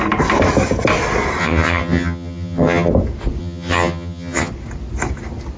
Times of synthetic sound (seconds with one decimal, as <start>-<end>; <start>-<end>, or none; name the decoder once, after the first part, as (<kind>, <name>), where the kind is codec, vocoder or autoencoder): 1.4-2.9 (vocoder, HiFi-GAN); 3.4-4.5